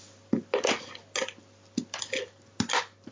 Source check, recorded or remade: recorded